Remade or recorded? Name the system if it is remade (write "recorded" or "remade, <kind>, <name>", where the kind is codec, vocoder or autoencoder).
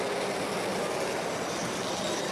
recorded